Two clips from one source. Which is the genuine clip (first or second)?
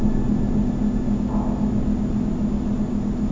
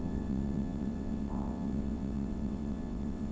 first